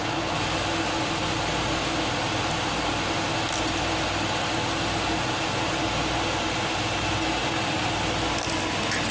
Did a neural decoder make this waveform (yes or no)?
no